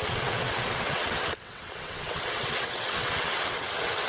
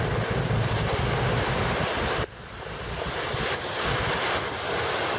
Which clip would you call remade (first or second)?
first